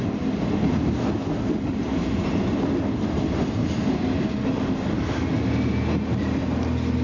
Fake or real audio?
real